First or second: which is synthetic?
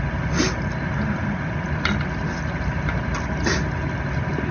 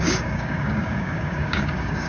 second